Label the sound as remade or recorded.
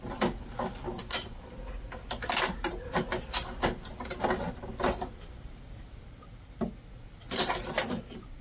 recorded